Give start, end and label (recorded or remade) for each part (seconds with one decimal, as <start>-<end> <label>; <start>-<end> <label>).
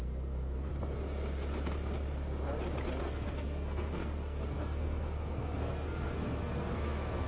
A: 0.0-0.7 remade; 0.7-3.0 recorded; 3.0-7.3 remade